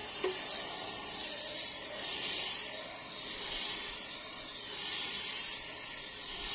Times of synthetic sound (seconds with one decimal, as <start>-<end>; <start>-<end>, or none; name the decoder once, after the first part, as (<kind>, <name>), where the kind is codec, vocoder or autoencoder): none